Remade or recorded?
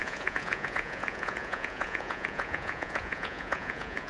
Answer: remade